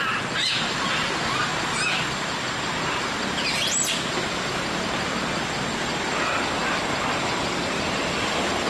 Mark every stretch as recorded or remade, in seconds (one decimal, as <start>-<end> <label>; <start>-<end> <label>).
0.0-8.7 recorded